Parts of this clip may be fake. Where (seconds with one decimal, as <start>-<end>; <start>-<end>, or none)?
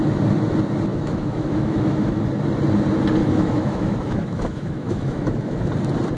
0.9-2.2; 3.2-5.7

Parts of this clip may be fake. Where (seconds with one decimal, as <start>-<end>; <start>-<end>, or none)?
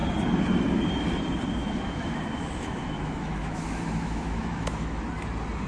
1.6-5.0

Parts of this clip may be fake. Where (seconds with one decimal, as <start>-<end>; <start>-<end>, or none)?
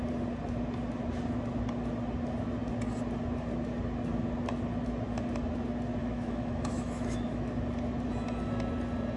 6.0-7.5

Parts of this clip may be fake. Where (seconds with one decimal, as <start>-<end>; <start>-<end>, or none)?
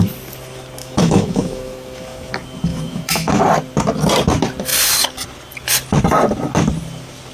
0.8-2.3; 2.7-3.4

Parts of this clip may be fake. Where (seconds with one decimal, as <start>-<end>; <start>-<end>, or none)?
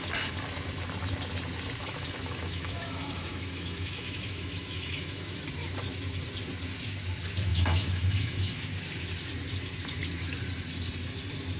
1.8-5.4; 7.5-8.6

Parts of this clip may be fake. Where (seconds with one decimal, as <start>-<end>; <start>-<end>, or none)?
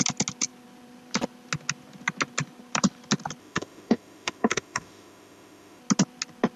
3.4-5.8